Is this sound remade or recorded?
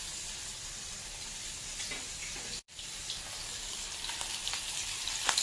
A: remade